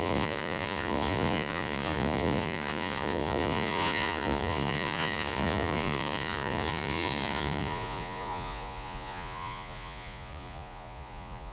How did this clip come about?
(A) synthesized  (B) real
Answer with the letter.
A